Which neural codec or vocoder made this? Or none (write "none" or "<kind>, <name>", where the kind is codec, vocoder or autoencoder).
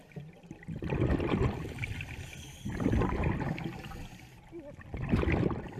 none